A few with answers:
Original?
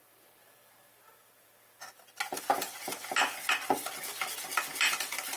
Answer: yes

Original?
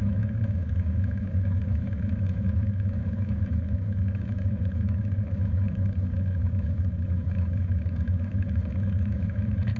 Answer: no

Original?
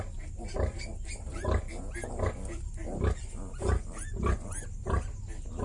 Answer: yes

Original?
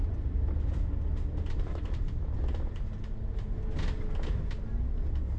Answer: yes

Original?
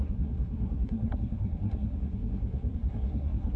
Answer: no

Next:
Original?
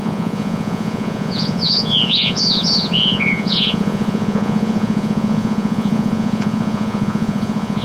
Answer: no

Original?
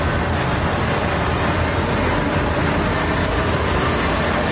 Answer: yes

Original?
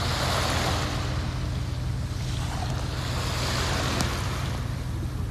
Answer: yes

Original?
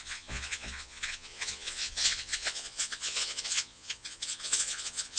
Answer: no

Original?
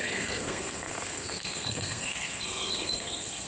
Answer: no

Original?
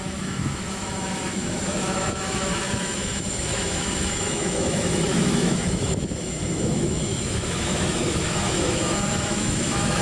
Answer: no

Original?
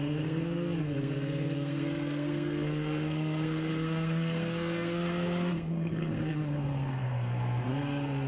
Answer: no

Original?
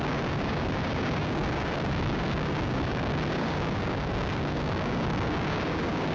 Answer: no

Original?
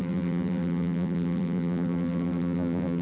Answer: no